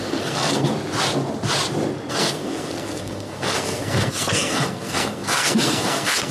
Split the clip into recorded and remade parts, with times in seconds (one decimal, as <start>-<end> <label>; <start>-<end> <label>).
0.0-0.7 remade; 0.7-2.1 recorded; 2.1-6.3 remade